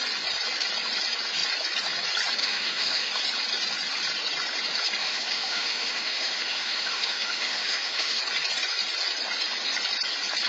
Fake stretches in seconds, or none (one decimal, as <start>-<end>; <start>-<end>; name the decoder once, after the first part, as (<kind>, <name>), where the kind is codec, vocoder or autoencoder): 2.4-3.1 (autoencoder, DAC-VAE); 5.0-8.2